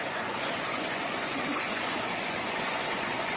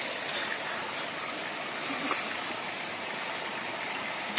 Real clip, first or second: second